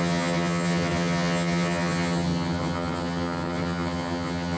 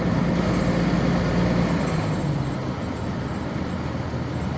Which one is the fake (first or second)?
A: first